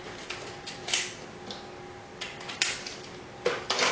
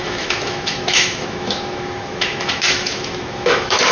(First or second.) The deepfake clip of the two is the second